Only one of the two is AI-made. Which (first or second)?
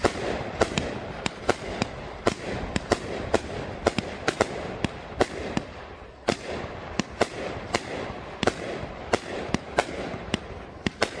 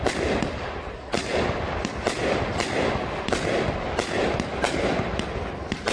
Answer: first